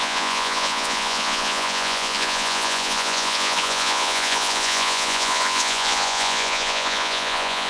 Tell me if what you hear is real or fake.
fake